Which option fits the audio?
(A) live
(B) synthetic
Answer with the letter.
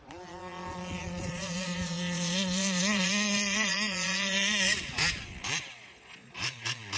B